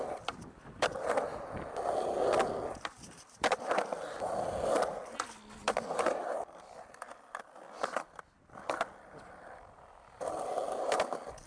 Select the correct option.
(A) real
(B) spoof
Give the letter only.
A